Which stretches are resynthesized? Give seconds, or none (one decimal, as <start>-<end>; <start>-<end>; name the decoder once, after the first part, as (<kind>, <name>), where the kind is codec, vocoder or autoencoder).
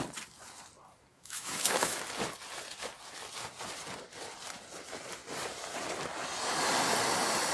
1.1-2.0 (autoencoder, DAC-VAE)